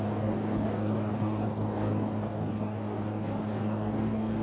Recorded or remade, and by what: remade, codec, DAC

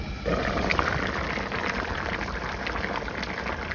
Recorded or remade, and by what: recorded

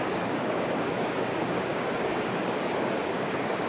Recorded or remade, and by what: remade, codec, DAC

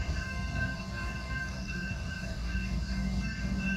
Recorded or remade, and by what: remade, codec, DAC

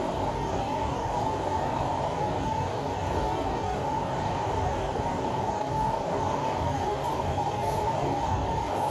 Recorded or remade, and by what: remade, codec, DAC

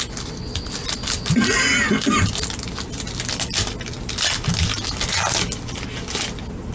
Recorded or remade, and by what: recorded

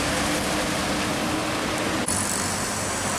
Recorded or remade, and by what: recorded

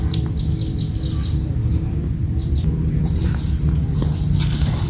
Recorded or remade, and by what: recorded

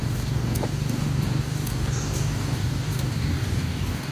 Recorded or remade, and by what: remade, codec, DAC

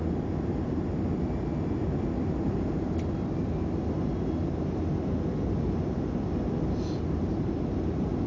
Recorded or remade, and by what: recorded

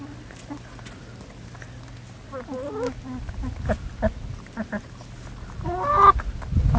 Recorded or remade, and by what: recorded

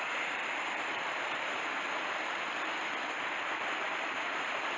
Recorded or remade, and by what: recorded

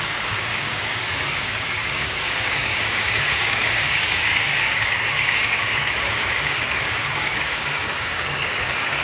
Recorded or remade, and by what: remade, codec, DAC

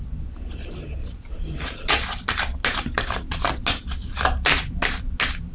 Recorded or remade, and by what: recorded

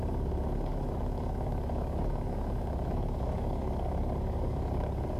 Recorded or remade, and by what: remade, codec, DAC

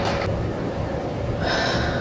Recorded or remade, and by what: recorded